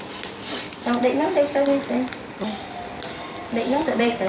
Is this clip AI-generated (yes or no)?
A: yes